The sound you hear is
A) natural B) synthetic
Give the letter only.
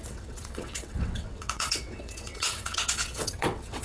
B